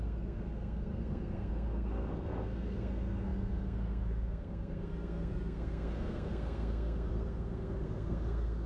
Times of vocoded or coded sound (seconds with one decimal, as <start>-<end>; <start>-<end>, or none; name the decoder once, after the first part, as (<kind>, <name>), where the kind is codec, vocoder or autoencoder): 0.0-8.7 (codec, SNAC)